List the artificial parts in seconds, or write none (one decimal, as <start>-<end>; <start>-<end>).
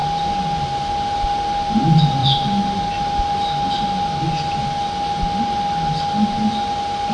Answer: 2.2-2.8